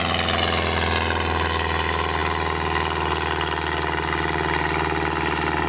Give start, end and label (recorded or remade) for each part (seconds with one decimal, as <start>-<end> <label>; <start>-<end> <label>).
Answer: 0.0-5.7 recorded